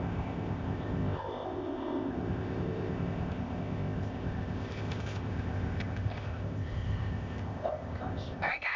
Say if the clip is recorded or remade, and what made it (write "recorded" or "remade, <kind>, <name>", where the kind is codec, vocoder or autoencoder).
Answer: remade, codec, ZipCodec